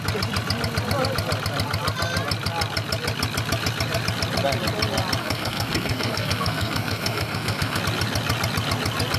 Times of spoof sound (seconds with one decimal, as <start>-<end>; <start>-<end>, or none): 5.2-7.8